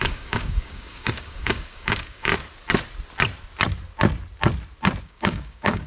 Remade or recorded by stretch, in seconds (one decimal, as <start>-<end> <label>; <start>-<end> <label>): 0.0-2.3 remade; 2.3-5.0 recorded; 5.0-5.9 remade